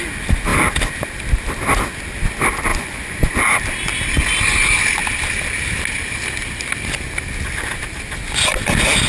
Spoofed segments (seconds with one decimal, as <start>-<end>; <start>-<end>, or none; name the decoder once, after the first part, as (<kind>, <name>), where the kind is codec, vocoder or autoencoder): 2.7-3.3 (vocoder, Vocos)